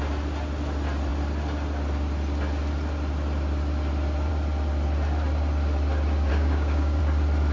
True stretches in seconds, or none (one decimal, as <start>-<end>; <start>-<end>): 0.0-6.3; 7.0-7.5